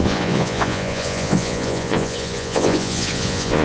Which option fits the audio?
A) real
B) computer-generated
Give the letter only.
B